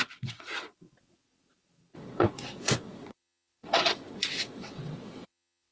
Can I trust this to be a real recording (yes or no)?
no